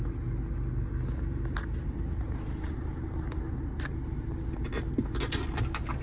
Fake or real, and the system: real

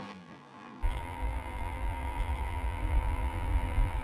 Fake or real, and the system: fake, vocoder, BigVGAN v2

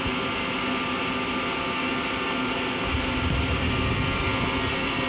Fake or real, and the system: real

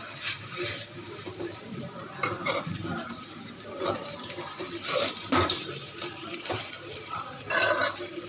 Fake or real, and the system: fake, vocoder, BigVGAN v2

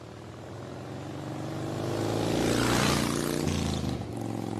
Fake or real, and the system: real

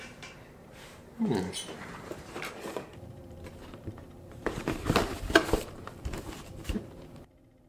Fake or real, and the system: fake, vocoder, BigVGAN v2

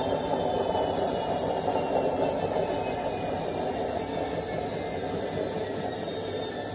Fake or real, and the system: real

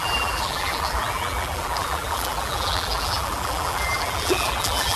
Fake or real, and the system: fake, vocoder, BigVGAN v2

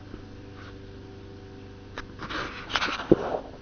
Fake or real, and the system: real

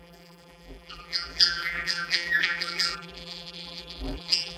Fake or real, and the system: fake, vocoder, BigVGAN v2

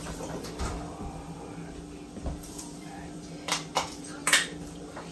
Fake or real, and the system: fake, vocoder, BigVGAN v2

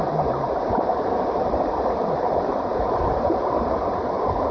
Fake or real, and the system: fake, vocoder, BigVGAN v2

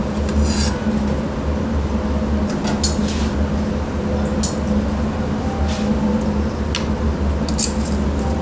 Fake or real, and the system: real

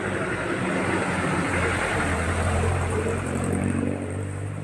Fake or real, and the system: fake, vocoder, BigVGAN v2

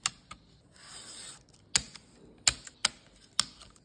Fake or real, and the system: real